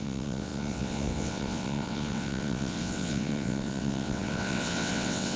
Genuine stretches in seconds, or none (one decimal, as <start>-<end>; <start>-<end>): none